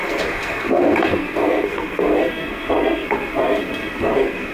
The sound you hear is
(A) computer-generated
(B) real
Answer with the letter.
A